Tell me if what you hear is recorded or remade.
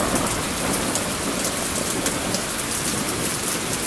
recorded